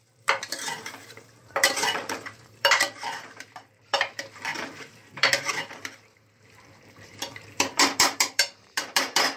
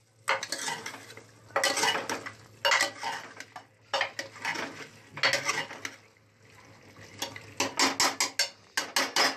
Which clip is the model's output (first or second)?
first